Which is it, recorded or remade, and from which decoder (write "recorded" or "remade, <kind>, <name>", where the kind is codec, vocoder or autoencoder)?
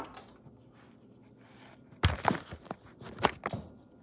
recorded